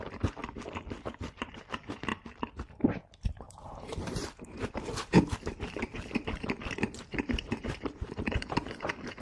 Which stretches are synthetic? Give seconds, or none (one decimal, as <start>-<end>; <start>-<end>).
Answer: 0.0-0.4; 1.1-2.1; 3.0-9.2